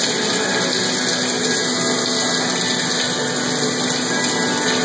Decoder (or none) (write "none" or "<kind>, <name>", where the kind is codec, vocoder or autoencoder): none